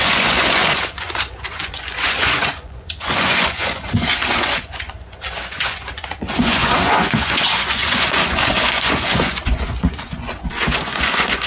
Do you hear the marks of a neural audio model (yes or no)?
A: yes